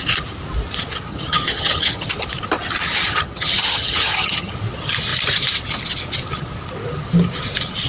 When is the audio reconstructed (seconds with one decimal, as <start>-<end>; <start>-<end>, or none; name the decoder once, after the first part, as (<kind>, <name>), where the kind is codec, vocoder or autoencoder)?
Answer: 1.1-2.1 (vocoder, HiFi-GAN); 2.9-4.5